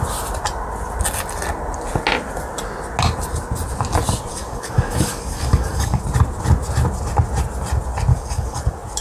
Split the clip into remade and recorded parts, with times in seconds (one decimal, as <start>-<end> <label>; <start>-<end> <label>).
0.0-4.3 recorded; 4.3-6.0 remade; 6.0-8.1 recorded; 8.1-8.6 remade; 8.6-9.0 recorded